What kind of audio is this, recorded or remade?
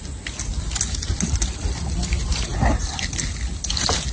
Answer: recorded